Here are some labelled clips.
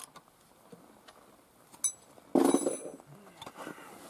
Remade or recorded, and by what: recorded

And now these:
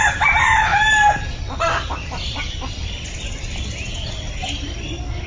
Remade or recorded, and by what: recorded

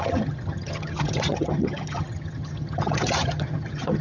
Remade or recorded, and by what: remade, vocoder, HiFi-GAN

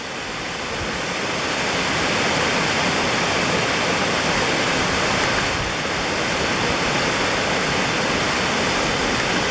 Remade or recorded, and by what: recorded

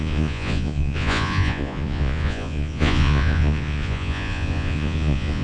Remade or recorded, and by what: remade, vocoder, Vocos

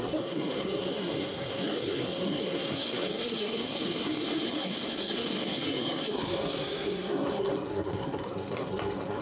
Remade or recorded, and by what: remade, codec, SNAC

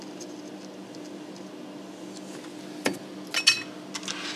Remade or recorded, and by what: recorded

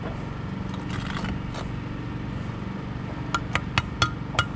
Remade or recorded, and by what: recorded